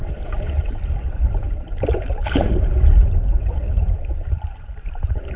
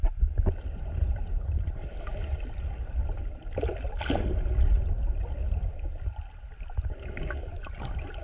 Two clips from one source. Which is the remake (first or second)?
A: first